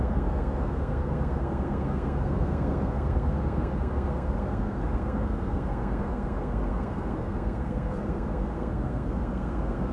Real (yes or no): no